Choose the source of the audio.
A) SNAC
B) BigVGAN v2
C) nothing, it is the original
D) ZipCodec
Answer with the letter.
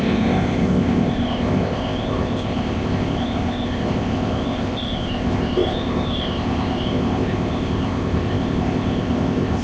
D